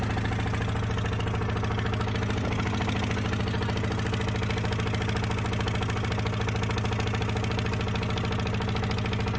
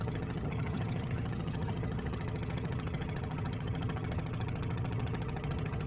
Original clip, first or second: first